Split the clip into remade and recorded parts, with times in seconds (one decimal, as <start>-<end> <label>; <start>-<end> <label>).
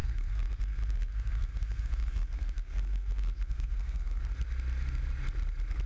0.0-4.3 remade; 4.3-5.9 recorded